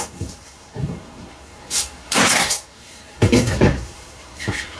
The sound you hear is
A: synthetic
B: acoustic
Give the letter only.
A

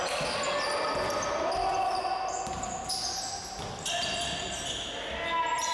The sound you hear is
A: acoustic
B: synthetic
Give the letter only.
A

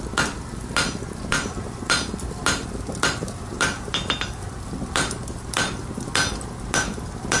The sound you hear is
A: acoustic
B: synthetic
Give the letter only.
A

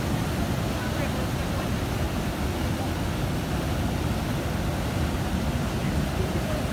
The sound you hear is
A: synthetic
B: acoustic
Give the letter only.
B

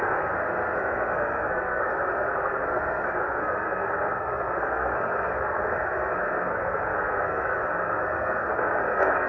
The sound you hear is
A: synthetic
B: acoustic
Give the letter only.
A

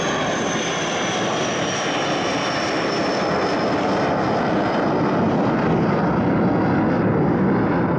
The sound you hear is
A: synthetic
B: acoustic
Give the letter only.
B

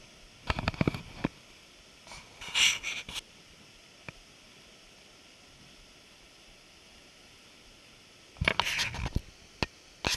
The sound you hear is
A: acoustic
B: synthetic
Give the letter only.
A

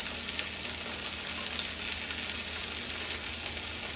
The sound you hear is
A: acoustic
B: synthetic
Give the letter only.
A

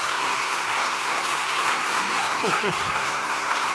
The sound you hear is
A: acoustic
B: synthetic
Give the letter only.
B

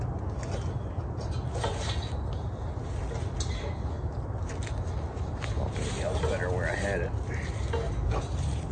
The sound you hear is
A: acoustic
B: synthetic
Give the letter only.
A